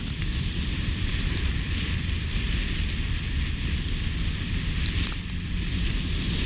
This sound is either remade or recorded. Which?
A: remade